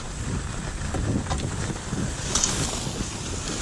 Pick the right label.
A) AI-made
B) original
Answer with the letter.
B